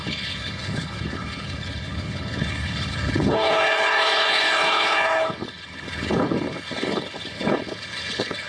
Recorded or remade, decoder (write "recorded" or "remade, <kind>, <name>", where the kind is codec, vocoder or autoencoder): remade, codec, HILCodec